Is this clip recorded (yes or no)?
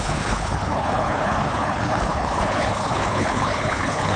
no